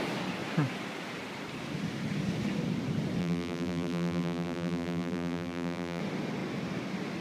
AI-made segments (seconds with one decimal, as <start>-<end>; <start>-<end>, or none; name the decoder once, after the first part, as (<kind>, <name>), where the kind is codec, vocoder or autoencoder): 3.2-6.0 (vocoder, BigVGAN v2)